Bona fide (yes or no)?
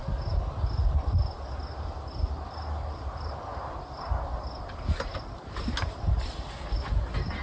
yes